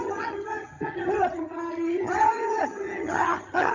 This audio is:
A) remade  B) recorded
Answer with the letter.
A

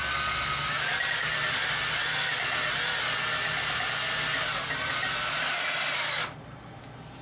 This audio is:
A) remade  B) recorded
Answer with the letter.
B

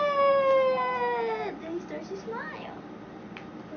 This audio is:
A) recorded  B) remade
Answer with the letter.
A